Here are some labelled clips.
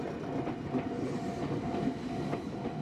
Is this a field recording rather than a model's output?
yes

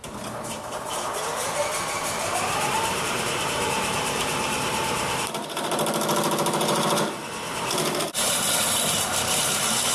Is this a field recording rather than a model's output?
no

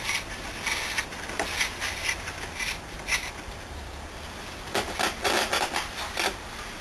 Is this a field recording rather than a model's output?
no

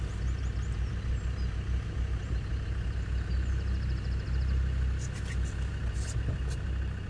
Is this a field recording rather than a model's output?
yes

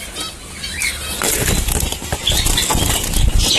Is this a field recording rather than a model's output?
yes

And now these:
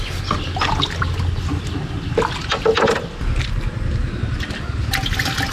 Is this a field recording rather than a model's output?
yes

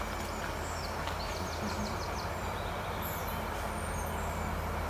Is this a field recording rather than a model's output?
yes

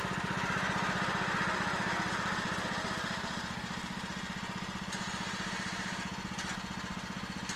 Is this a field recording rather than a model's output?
yes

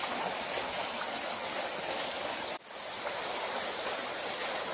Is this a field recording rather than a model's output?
yes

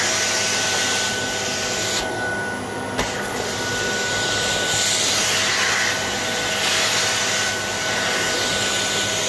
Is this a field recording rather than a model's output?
yes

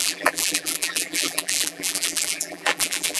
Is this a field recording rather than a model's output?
no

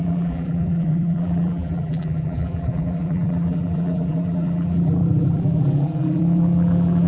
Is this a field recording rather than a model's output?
no